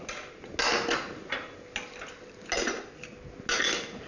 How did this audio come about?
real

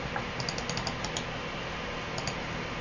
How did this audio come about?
real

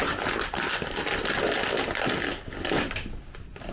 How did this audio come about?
real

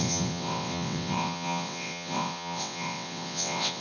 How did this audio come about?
fake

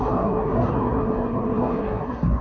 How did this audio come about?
fake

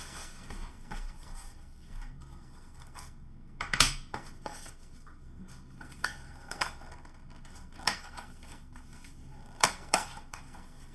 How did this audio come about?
fake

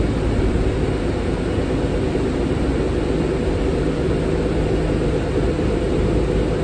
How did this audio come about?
real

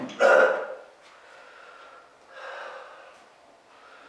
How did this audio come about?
real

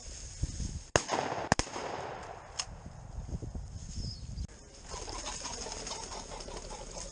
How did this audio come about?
real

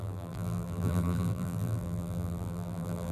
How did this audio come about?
fake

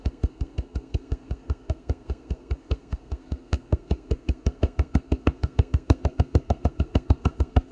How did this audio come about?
fake